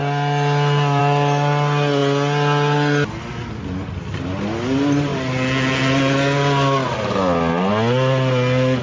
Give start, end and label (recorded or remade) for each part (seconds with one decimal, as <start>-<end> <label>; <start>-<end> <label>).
0.0-8.8 recorded